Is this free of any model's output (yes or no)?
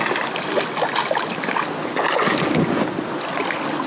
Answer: yes